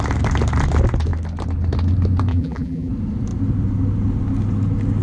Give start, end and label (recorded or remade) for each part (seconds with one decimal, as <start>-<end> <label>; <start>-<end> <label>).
0.0-2.3 recorded; 2.3-2.9 remade; 2.9-5.0 recorded